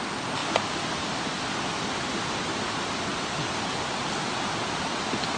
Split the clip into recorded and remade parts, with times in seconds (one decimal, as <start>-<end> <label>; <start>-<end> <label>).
0.0-5.4 recorded